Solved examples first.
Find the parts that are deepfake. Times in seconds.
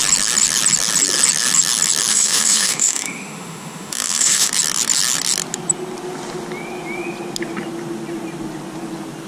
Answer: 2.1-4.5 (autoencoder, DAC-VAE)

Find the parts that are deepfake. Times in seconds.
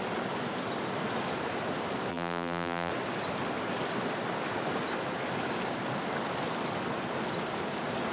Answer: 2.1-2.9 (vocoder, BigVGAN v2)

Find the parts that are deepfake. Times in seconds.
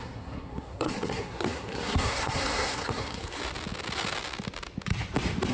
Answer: 0.0-3.4 (codec, SNAC)